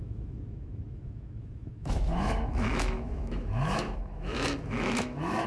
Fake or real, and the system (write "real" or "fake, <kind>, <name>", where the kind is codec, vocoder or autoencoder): fake, autoencoder, DAC-VAE